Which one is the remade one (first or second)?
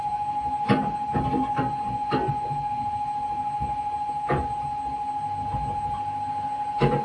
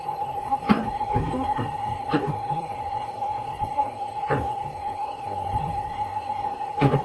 second